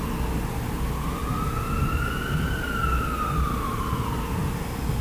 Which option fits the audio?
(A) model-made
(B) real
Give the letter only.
B